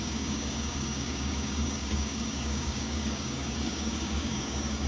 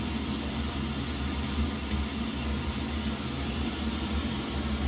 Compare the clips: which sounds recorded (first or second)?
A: second